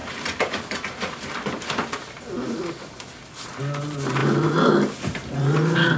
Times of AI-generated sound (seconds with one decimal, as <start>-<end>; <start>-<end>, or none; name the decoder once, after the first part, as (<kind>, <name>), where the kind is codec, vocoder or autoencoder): none